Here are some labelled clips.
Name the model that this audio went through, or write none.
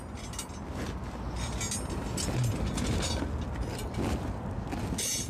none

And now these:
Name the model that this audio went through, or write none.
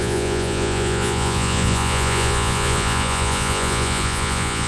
vocoder, Vocos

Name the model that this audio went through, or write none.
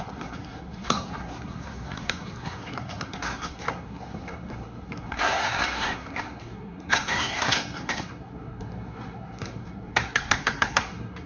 codec, SNAC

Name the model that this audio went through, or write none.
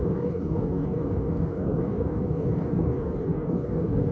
codec, DAC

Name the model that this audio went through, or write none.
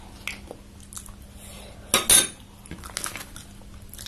none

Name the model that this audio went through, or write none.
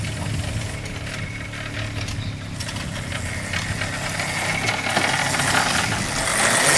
none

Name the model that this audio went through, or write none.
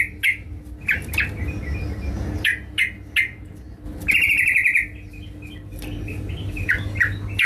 none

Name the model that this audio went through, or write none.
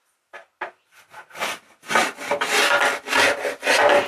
none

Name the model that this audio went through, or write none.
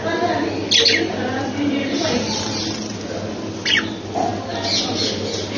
none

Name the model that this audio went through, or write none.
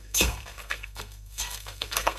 codec, SNAC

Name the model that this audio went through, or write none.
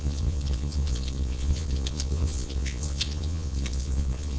vocoder, Vocos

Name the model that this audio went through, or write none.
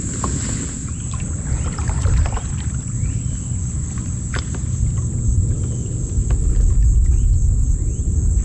none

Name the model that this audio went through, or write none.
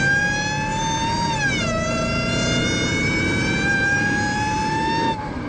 none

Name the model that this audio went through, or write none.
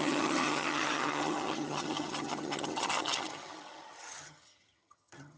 vocoder, HiFi-GAN